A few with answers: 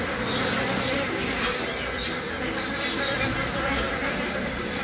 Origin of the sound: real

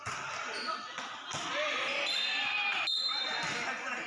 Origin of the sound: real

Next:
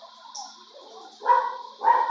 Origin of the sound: real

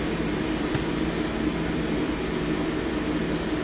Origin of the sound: real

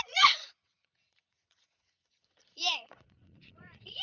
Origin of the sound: fake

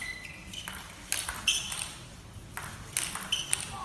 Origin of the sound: real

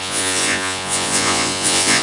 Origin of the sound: fake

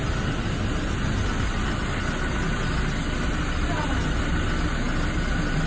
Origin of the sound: real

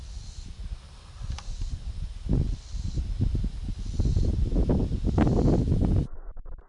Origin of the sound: real